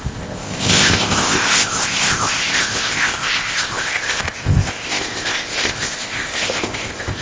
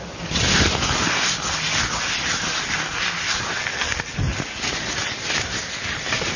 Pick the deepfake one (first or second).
first